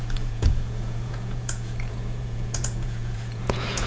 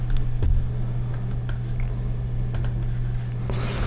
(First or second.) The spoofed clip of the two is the first